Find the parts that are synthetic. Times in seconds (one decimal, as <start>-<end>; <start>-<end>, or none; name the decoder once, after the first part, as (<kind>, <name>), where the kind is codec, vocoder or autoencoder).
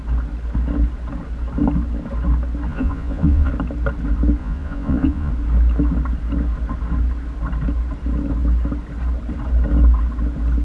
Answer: 2.7-3.5 (vocoder, Vocos); 4.4-5.3